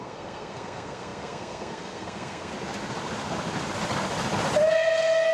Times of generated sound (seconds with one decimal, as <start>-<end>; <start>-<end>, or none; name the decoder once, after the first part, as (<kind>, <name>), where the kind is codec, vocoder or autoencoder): 0.0-2.5 (codec, SNAC); 4.7-5.3